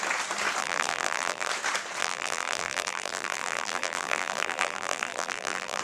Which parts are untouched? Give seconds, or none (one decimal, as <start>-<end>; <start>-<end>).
0.0-0.6; 1.5-2.0